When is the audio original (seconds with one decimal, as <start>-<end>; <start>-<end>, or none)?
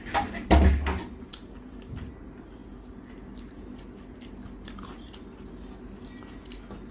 0.0-6.9